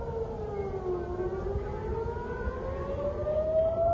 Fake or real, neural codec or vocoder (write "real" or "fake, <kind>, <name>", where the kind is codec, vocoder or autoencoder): real